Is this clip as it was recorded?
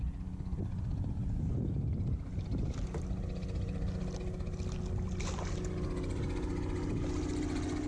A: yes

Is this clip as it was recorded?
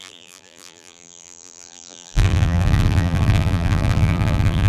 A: no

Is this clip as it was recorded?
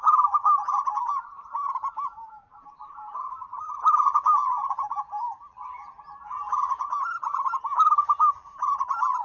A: no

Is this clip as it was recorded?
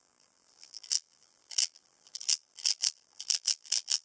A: no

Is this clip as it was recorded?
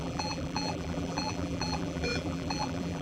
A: no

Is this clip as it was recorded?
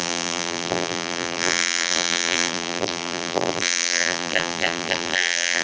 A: no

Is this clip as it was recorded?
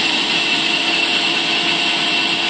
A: no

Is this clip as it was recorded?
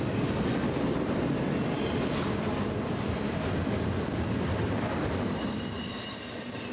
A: yes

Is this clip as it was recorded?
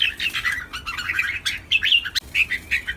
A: yes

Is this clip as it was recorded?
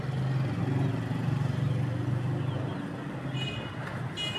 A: yes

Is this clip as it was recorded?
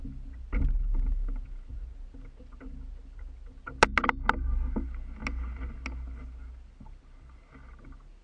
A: yes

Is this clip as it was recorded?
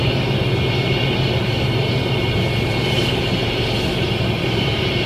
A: yes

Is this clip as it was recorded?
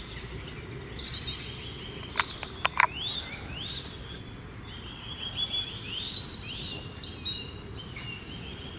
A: yes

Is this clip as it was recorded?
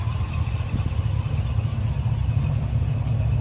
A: yes